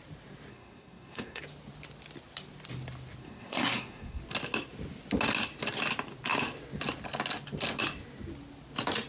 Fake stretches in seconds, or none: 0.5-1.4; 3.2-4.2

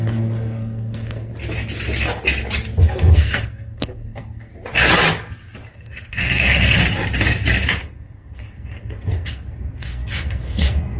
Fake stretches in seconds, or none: 0.0-1.3; 2.8-4.5; 5.7-6.8; 7.8-11.0

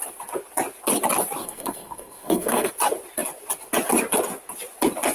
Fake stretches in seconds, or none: 1.4-2.7

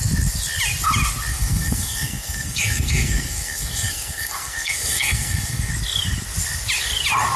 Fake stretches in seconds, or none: 1.3-5.7